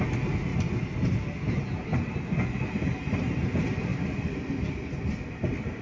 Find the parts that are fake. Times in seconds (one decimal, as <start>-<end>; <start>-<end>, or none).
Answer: none